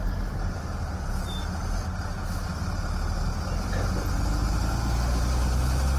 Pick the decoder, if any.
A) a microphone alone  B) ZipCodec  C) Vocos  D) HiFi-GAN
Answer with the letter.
A